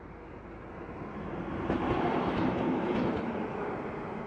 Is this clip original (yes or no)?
yes